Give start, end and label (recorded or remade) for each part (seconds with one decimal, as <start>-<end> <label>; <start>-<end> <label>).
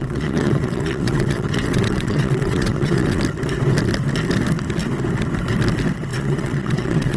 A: 0.0-3.2 remade; 3.2-6.1 recorded; 6.1-7.2 remade